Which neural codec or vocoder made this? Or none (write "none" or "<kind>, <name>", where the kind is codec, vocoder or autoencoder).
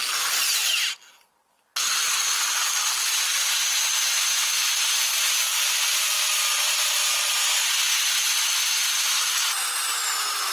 none